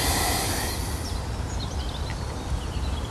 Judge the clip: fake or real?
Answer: real